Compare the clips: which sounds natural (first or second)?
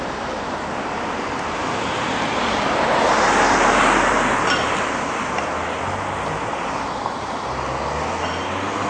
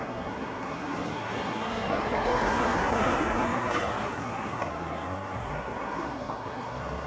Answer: first